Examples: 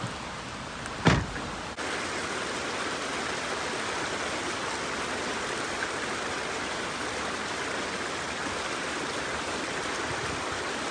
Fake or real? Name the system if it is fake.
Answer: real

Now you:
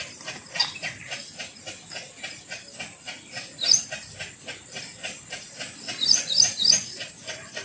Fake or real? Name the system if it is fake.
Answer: real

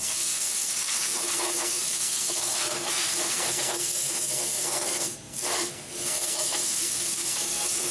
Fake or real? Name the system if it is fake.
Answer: fake, codec, SNAC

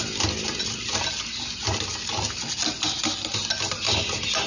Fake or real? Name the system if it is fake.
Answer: real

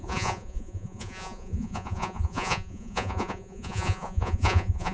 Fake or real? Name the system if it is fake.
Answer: fake, vocoder, Vocos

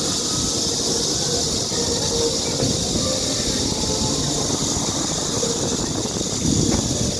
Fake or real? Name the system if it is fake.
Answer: real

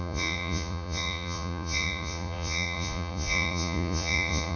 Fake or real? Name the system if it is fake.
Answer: fake, vocoder, Vocos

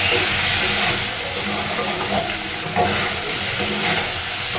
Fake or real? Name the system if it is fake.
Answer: real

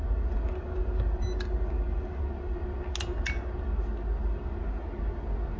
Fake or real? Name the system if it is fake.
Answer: real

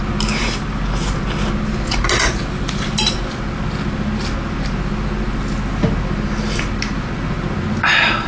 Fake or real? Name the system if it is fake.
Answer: real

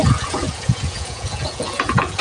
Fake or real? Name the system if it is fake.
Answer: fake, vocoder, Vocos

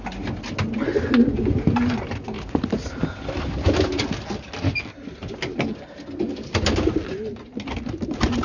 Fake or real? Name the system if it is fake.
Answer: real